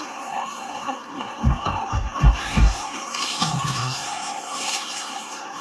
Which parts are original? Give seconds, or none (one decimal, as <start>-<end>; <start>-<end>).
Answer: none